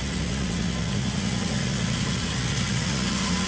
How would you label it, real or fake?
fake